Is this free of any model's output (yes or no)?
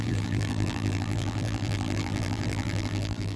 no